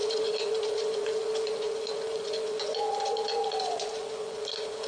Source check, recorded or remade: remade